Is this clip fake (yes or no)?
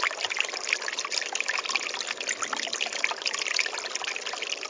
no